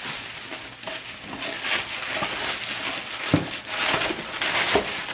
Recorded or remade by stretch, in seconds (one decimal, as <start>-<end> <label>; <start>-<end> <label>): 0.0-5.1 recorded